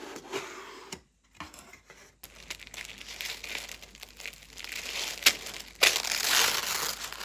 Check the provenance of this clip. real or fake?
real